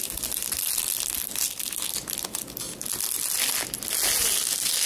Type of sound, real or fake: real